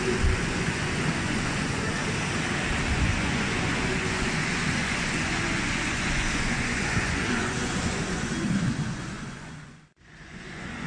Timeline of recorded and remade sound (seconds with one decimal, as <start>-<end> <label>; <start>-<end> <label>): 0.0-2.0 remade; 2.0-2.9 recorded; 2.9-10.9 remade